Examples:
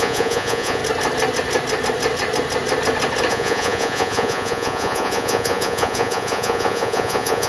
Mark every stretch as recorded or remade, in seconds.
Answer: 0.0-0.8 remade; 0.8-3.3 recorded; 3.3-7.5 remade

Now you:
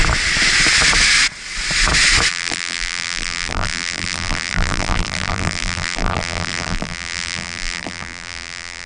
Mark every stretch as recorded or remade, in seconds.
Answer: 0.0-2.3 recorded; 2.3-8.9 remade

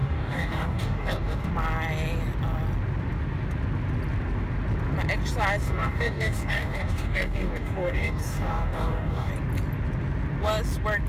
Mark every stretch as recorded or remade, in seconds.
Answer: 0.0-1.5 remade; 1.5-5.6 recorded; 5.6-9.3 remade; 9.3-11.1 recorded

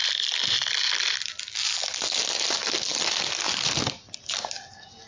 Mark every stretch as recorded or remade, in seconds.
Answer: 0.0-1.5 remade; 1.5-5.1 recorded